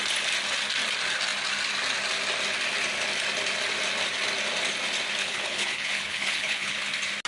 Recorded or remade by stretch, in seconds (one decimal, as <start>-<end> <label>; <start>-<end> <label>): 0.0-5.2 recorded; 5.2-6.8 remade; 6.8-7.3 recorded